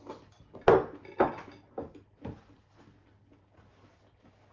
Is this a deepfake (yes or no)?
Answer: no